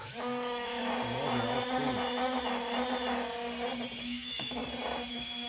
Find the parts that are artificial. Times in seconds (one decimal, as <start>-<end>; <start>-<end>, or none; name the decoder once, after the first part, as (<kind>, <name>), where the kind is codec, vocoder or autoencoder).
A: 0.0-0.8 (autoencoder, DAC-VAE); 4.0-4.6; 5.1-5.5